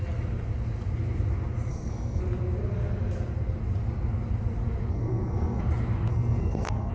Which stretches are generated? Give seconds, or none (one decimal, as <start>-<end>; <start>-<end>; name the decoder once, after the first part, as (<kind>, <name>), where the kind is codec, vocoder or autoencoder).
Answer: 1.7-2.2 (codec, SNAC); 4.9-5.6; 6.1-6.9